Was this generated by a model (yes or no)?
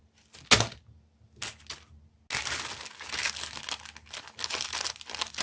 no